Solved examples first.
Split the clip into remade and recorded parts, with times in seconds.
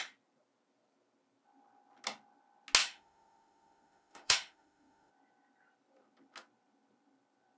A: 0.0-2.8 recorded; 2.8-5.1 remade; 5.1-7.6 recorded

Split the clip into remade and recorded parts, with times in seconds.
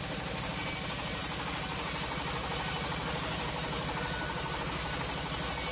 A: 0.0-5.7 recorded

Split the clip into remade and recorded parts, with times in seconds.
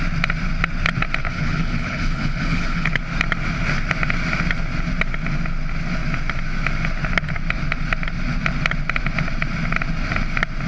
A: 0.0-1.2 recorded; 1.2-3.0 remade; 3.0-10.7 recorded